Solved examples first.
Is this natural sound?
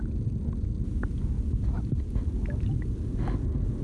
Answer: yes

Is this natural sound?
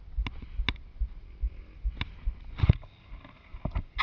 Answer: yes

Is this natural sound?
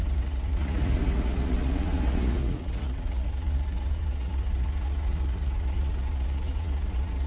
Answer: no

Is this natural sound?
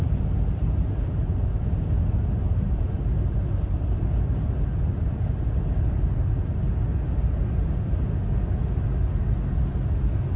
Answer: yes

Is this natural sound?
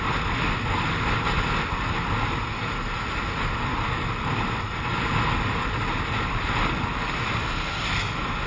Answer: yes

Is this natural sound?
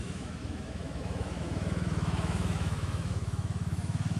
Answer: no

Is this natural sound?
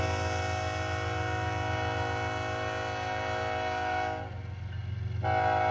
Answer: yes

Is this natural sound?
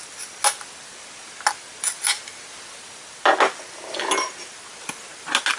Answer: yes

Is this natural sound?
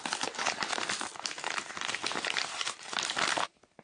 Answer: no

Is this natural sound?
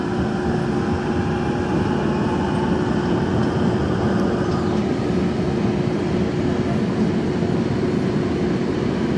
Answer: yes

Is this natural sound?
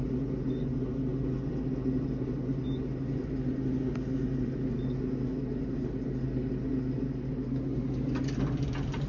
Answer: yes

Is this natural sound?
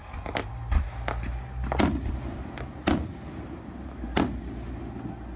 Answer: yes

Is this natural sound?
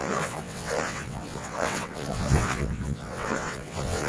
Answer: no